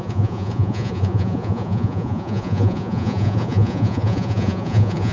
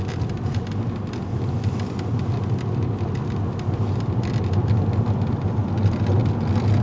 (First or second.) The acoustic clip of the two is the second